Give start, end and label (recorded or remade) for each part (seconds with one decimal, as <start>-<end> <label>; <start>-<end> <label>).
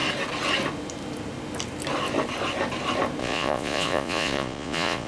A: 0.0-3.2 recorded; 3.2-5.1 remade